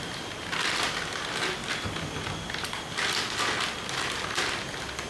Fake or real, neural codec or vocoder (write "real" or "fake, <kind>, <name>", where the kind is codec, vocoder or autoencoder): real